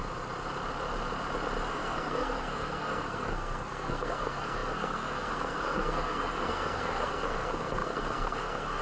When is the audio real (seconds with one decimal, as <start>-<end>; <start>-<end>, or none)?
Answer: 0.0-1.7